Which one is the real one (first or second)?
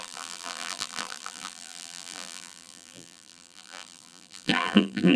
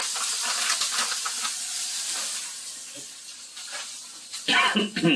second